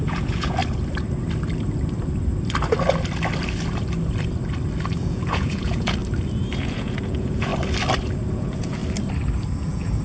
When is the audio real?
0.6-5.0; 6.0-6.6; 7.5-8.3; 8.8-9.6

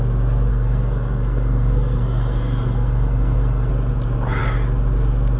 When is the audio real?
0.0-0.5; 3.7-5.4

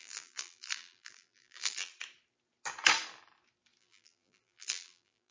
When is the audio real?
1.9-3.8

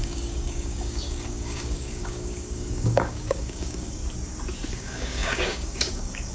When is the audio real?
4.0-4.7

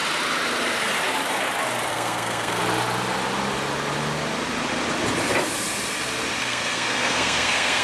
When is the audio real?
0.0-1.9; 2.6-6.4

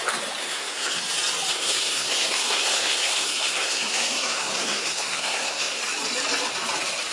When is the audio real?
0.0-0.4; 1.0-1.5; 5.8-7.1